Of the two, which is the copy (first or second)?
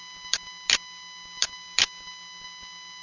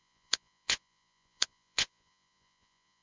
second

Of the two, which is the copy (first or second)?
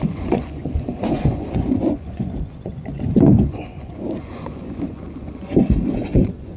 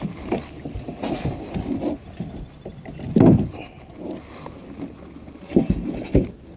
first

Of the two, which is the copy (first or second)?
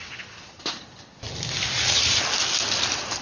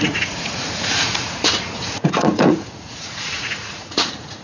second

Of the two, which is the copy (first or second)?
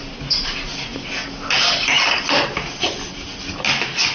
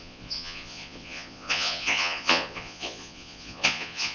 second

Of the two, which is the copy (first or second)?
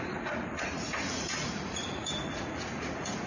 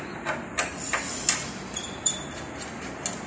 first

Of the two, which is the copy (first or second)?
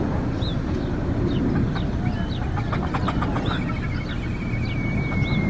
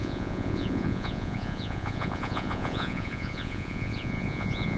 second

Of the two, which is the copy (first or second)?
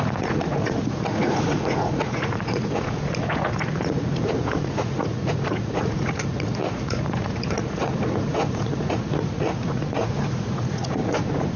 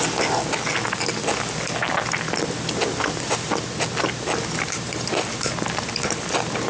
first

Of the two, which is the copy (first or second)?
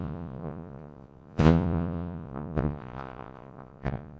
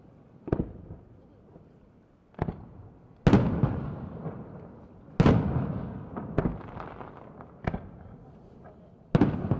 first